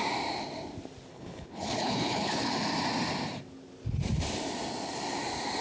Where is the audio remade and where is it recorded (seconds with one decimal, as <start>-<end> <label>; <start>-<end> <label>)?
0.0-1.1 recorded; 1.1-2.5 remade; 2.5-5.6 recorded